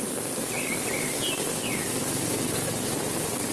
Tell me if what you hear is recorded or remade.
recorded